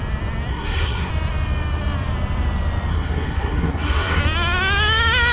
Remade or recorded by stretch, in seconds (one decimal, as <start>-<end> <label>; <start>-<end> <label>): 0.0-0.5 recorded; 0.5-1.1 remade; 1.1-2.9 recorded; 2.9-4.2 remade; 4.2-5.3 recorded